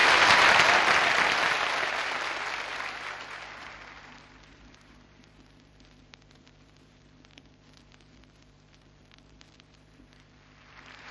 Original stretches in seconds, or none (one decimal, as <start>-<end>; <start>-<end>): 0.0-4.7